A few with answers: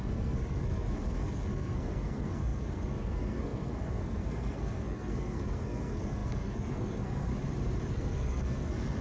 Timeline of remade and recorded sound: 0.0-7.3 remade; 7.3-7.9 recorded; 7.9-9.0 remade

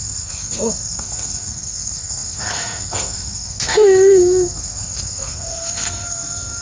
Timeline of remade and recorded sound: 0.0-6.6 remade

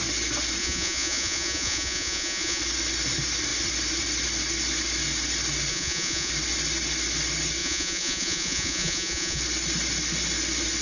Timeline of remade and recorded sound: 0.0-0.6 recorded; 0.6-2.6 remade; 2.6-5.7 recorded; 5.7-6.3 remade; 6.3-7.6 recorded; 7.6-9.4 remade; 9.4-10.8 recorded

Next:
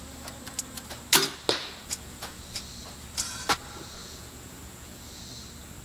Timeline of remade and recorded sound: 0.0-1.6 recorded; 1.6-2.4 remade; 2.4-4.0 recorded; 4.0-5.2 remade; 5.2-5.8 recorded

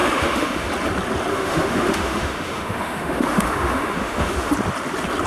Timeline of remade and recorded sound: 0.0-0.7 remade; 0.7-1.3 recorded; 1.3-4.5 remade; 4.5-5.3 recorded